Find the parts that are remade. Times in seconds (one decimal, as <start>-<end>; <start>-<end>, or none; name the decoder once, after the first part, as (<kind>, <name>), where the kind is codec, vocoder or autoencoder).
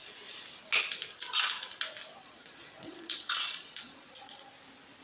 2.2-4.5 (vocoder, Vocos)